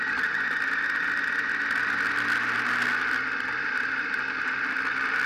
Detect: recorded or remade recorded